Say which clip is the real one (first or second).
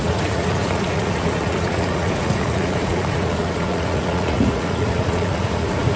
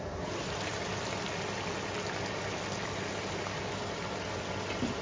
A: second